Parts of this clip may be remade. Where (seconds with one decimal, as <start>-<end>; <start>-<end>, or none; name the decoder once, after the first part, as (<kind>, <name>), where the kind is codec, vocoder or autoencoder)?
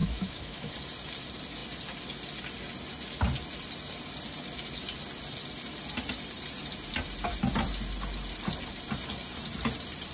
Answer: 0.0-0.7 (autoencoder, DAC-VAE)